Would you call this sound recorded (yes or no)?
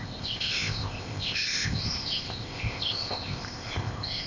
no